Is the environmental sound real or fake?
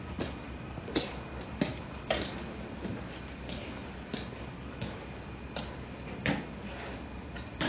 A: real